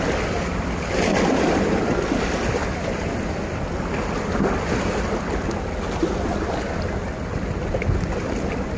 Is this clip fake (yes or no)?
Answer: no